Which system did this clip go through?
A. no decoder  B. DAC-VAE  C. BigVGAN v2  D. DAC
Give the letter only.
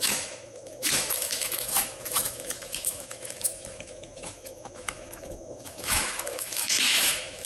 B